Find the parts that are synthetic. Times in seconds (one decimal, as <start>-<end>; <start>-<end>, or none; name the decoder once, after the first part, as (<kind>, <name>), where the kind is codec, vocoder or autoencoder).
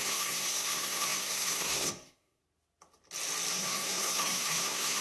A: 0.0-2.4 (codec, SNAC); 3.5-5.0